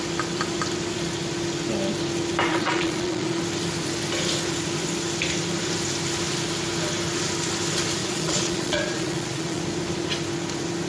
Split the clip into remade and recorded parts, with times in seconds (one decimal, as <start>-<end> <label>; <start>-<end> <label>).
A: 0.0-2.5 recorded; 2.5-3.4 remade; 3.4-8.0 recorded; 8.0-9.6 remade; 9.6-10.9 recorded